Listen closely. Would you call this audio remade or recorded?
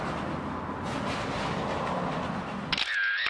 recorded